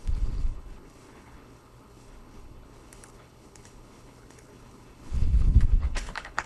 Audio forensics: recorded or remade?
remade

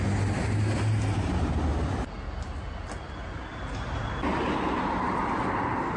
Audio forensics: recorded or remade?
recorded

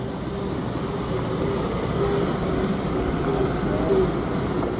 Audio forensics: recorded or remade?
recorded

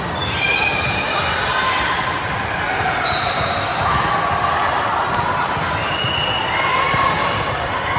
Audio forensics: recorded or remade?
recorded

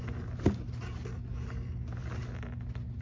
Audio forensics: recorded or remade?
recorded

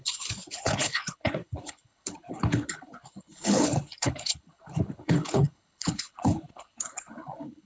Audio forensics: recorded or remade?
remade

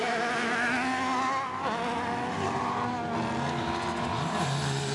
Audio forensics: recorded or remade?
recorded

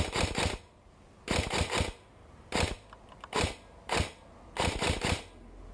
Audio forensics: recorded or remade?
recorded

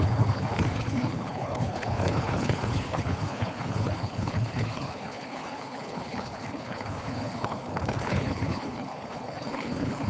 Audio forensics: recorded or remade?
remade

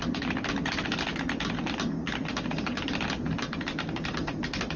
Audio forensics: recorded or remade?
recorded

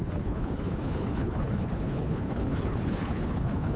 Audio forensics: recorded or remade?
remade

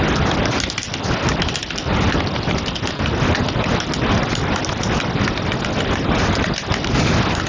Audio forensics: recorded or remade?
recorded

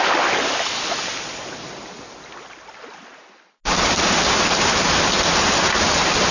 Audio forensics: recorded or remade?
recorded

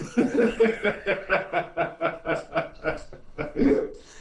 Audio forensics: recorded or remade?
remade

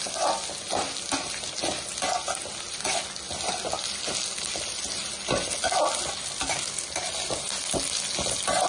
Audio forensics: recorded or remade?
recorded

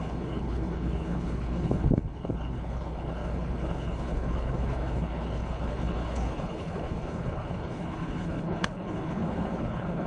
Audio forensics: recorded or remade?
remade